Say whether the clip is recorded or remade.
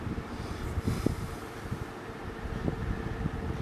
recorded